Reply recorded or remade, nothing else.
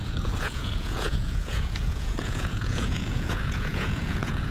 remade